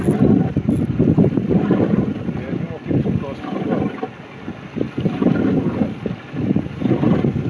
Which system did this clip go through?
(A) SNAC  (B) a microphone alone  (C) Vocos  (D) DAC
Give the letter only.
B